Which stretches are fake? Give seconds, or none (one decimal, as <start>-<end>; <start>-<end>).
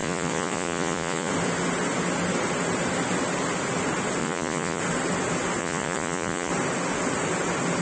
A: 0.0-1.3; 4.2-4.8; 5.6-6.5